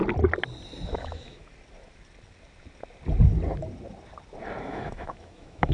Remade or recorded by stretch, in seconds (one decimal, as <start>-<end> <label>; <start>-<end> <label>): 0.0-0.9 recorded; 0.9-1.5 remade; 1.5-4.6 recorded; 4.6-5.7 remade